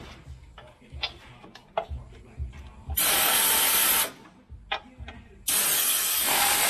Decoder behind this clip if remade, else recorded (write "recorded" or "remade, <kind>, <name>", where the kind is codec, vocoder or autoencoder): recorded